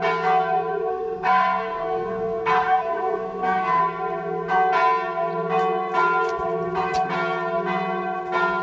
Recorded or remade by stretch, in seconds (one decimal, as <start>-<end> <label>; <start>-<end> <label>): 0.0-0.9 recorded; 0.9-3.8 remade; 3.8-8.6 recorded